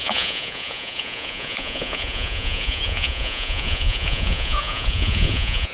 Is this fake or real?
fake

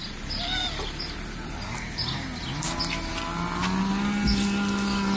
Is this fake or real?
real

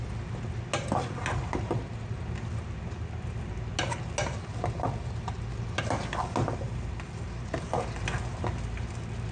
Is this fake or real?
real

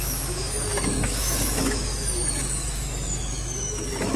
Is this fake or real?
fake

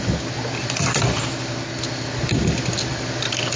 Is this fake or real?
real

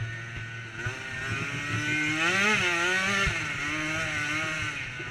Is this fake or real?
real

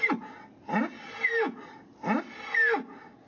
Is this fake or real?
real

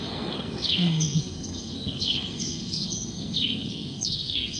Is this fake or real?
fake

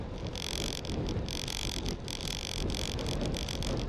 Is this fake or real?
real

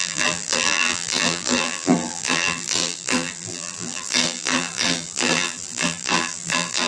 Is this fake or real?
fake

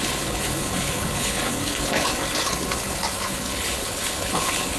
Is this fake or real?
fake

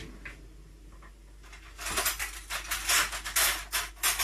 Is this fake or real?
real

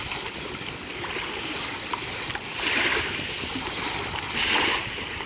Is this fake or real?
real